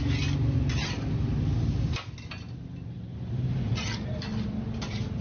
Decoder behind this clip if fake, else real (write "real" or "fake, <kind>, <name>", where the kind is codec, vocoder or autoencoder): real